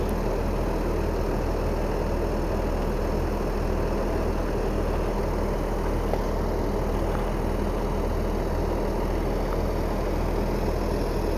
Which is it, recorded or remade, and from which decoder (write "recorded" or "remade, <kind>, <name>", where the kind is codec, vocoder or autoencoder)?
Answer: recorded